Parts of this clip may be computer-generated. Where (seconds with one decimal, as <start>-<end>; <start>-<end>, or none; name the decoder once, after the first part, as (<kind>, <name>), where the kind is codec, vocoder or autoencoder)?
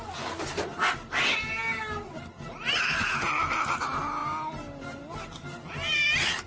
none